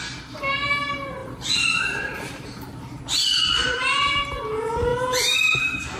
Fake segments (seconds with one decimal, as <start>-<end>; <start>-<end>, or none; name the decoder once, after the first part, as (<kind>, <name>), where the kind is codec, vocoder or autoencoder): 1.2-3.0 (vocoder, BigVGAN v2); 3.6-4.2; 4.9-6.0